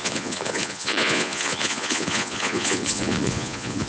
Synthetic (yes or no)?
yes